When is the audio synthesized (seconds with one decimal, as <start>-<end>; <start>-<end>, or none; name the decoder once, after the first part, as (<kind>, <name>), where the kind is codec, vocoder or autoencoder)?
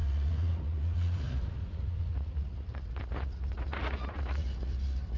0.0-5.2 (vocoder, Vocos)